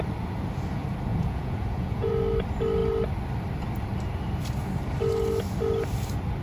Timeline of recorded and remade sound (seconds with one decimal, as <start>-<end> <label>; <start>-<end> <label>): 0.0-1.1 recorded; 1.1-2.1 remade; 2.1-6.4 recorded